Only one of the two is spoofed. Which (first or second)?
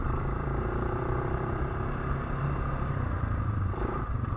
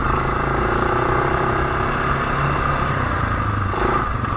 first